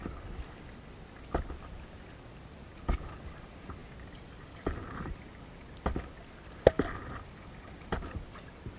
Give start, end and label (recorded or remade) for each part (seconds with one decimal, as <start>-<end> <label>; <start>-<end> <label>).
0.0-8.8 recorded